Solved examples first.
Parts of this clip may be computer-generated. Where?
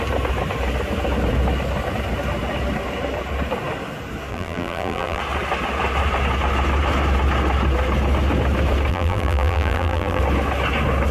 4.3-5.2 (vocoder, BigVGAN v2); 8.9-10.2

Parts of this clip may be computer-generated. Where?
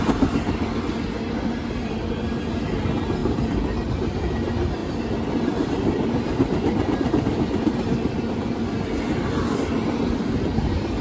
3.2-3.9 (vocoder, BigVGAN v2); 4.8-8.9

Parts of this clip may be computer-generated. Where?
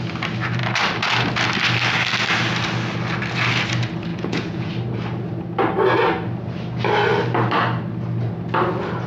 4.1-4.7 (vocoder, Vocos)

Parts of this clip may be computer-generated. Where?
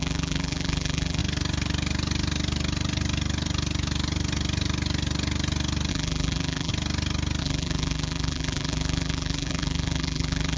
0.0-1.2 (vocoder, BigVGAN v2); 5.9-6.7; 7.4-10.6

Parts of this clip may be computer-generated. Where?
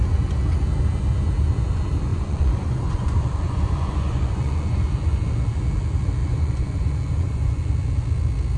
2.1-4.8 (vocoder, Vocos); 6.2-7.7